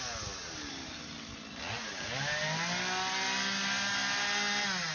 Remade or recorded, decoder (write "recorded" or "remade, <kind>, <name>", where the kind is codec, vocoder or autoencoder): recorded